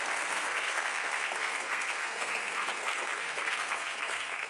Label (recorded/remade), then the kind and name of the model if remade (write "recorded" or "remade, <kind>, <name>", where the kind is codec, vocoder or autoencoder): remade, codec, SNAC